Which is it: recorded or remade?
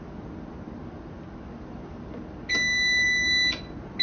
recorded